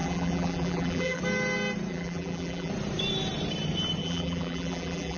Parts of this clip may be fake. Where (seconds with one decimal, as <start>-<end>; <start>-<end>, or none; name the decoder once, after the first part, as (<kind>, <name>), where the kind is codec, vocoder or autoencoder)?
0.0-1.2 (vocoder, BigVGAN v2); 1.9-2.7; 4.0-5.2